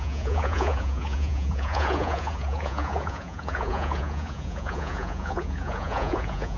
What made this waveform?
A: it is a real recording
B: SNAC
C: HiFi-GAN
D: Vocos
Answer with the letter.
D